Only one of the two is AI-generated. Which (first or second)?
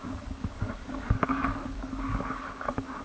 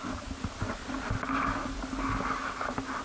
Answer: first